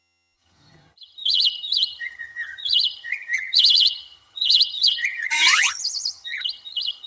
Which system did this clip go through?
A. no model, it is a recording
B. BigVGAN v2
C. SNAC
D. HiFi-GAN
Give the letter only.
D